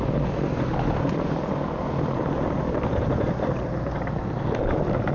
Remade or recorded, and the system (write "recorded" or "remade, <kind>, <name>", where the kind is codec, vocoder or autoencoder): recorded